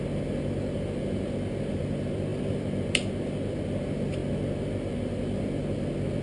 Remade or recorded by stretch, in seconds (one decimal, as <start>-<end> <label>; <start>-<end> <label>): 0.0-6.2 recorded